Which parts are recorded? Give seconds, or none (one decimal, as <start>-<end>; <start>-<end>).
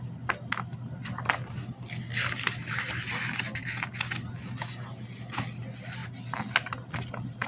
0.0-7.5